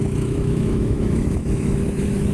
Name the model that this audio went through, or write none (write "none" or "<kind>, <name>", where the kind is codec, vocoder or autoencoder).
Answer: autoencoder, DAC-VAE